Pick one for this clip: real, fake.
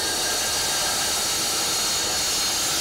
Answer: real